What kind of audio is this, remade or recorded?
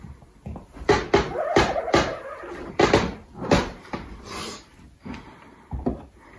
recorded